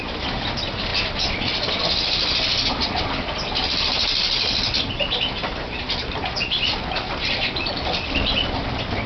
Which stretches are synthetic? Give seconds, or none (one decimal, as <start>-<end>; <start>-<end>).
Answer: none